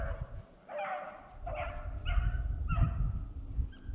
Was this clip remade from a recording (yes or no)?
no